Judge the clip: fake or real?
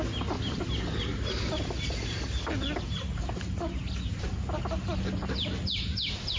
real